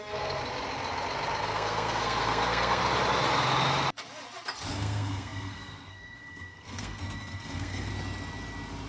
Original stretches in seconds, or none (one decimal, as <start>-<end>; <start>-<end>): 0.4-1.4; 2.8-4.7; 7.9-8.9